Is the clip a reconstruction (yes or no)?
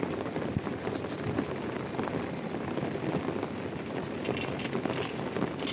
no